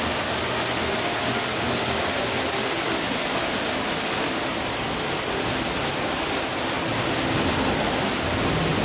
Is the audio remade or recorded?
recorded